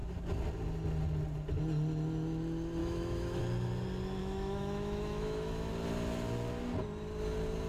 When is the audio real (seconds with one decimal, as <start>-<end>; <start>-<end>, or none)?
0.0-2.8; 3.4-4.2; 5.7-7.7